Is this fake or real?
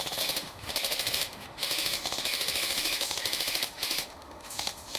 fake